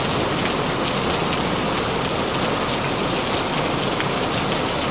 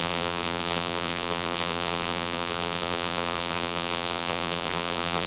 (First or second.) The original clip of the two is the first